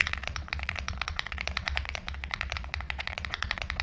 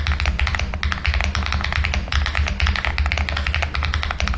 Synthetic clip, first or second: first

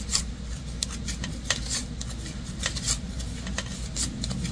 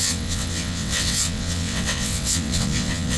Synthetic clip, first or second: second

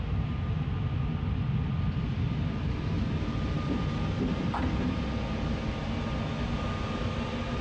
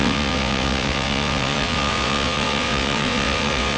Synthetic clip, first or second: second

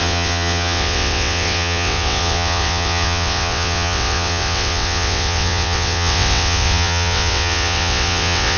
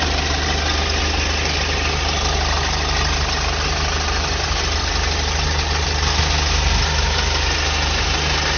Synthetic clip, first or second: first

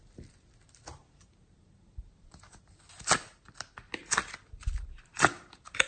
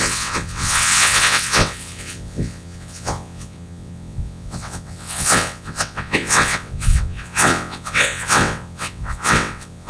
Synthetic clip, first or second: second